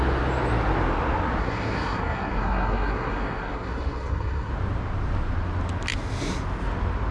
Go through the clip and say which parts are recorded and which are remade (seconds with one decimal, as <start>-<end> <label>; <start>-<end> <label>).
0.0-1.4 recorded; 1.4-4.5 remade; 4.5-7.1 recorded